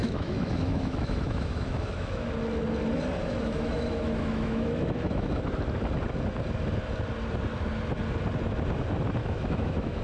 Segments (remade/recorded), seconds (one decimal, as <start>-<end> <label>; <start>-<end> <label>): 0.0-2.3 remade; 2.3-3.2 recorded; 3.2-5.4 remade; 5.4-9.2 recorded; 9.2-10.0 remade